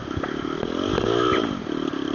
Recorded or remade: recorded